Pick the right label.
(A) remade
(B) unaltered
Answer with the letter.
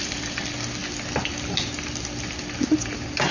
B